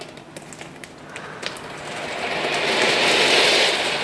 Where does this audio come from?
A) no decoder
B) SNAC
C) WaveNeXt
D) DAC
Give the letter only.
A